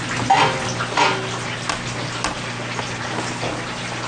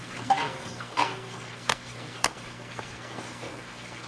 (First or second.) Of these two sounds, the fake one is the second